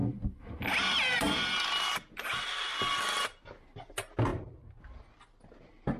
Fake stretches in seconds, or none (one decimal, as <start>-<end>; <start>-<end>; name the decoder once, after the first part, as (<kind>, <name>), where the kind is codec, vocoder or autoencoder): none